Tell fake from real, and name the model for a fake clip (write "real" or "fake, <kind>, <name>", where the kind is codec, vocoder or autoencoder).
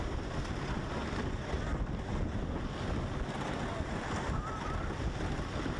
real